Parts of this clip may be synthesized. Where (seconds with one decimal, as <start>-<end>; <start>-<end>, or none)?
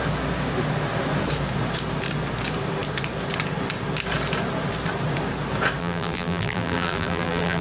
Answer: 5.8-7.6